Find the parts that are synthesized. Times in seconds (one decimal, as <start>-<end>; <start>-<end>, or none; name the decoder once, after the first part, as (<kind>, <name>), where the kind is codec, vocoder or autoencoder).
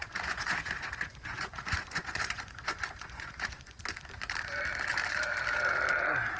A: 0.0-3.8 (vocoder, Vocos)